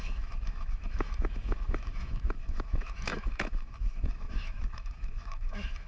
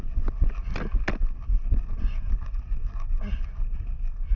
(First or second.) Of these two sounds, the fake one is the first